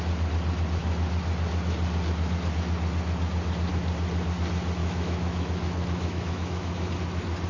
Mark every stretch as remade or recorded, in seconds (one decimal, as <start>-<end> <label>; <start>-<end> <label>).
0.0-4.8 recorded; 4.8-6.9 remade; 6.9-7.5 recorded